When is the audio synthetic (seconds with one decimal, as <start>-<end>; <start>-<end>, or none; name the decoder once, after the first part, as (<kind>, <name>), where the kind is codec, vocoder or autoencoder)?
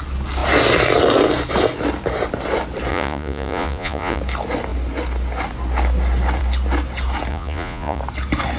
2.9-4.2 (vocoder, Vocos); 7.3-8.0